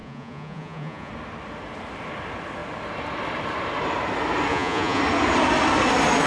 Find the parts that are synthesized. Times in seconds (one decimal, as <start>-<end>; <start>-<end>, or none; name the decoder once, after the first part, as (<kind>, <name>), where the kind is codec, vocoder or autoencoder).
0.0-1.1 (vocoder, Vocos); 4.5-5.0